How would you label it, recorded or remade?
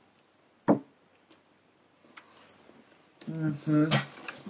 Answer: recorded